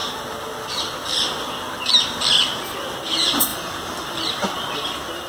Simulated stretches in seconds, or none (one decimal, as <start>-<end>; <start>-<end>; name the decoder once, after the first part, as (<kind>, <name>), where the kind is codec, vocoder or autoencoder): none